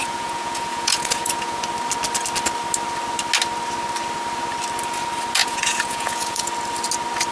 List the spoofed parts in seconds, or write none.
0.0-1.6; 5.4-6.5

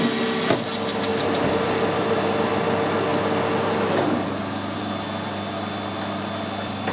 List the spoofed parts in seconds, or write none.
1.1-2.5

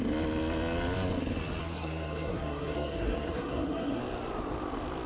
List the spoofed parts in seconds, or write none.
1.6-4.0

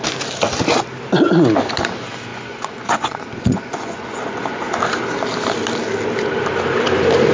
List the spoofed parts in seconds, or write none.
2.3-4.8